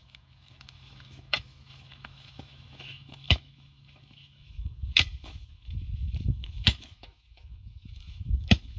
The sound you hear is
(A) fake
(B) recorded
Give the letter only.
A